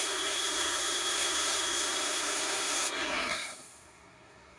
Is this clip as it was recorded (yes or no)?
no